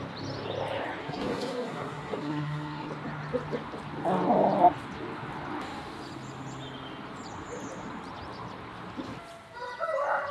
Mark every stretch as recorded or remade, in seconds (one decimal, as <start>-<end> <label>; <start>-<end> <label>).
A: 0.0-1.0 recorded; 1.0-2.9 remade; 2.9-10.3 recorded